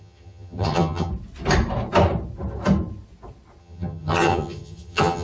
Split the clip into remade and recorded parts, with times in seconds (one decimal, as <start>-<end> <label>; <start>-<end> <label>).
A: 0.0-1.1 remade; 1.1-3.6 recorded; 3.6-5.2 remade